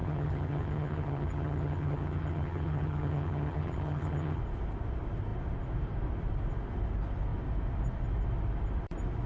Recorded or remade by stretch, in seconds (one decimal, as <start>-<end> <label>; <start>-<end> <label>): 0.0-4.4 remade; 4.4-9.3 recorded